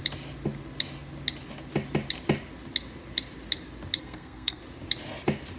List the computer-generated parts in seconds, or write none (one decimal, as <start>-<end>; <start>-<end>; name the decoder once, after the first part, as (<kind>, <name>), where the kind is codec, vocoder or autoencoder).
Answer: 4.0-4.6 (codec, SNAC)